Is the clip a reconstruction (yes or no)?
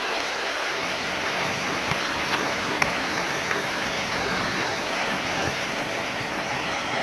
yes